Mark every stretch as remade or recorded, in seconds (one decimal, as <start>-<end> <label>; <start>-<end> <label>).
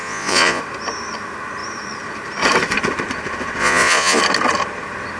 0.0-0.6 remade; 0.6-3.6 recorded; 3.6-4.2 remade; 4.2-5.2 recorded